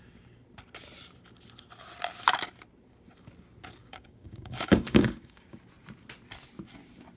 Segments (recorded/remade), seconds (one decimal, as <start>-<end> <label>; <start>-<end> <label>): 0.0-3.8 recorded; 3.8-5.6 remade; 5.6-7.2 recorded